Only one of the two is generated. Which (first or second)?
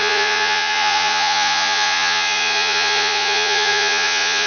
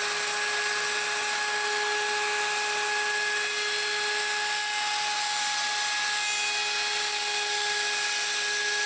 first